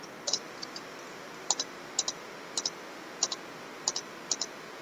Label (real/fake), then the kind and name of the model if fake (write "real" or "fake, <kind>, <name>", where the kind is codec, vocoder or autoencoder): real